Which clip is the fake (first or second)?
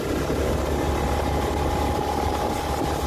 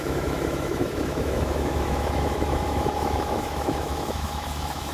second